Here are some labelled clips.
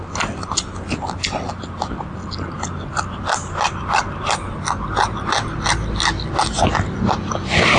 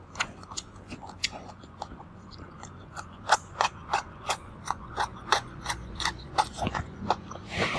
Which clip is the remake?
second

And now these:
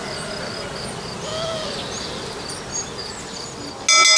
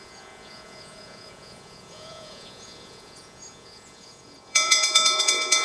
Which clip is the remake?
second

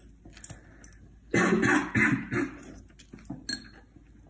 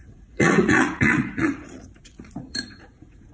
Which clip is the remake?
second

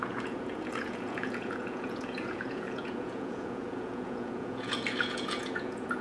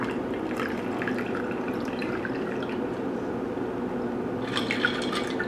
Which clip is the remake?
first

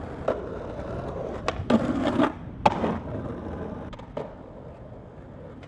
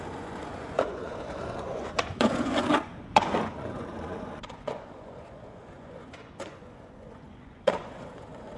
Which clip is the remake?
second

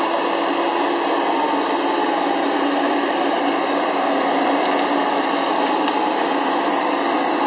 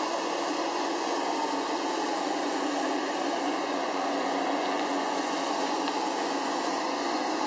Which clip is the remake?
second